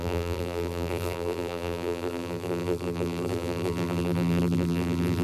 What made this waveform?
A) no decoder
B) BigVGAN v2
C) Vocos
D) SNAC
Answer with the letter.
B